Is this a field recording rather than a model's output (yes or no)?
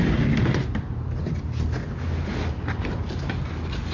yes